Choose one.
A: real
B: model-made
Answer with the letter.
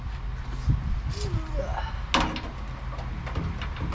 A